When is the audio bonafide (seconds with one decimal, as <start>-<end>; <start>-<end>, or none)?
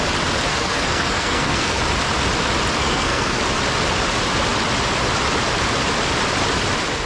0.0-0.5; 1.8-2.8; 3.4-7.1